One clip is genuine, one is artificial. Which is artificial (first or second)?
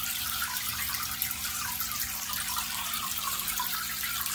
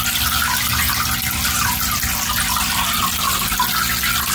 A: first